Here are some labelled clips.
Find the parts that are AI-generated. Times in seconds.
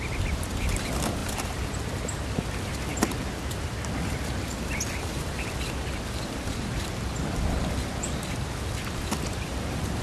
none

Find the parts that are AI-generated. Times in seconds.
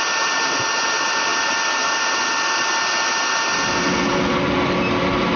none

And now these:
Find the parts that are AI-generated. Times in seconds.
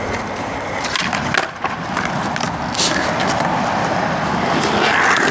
none